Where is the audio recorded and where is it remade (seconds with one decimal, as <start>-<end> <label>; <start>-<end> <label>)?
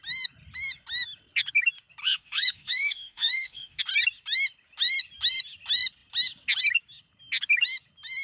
0.0-2.0 recorded; 2.0-3.8 remade; 3.8-8.2 recorded